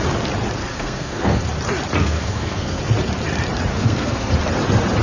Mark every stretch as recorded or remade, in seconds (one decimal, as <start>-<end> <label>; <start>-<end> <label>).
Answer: 0.0-0.6 recorded; 0.6-1.4 remade; 1.4-2.0 recorded; 2.0-2.8 remade; 2.8-3.7 recorded; 3.7-4.3 remade; 4.3-5.0 recorded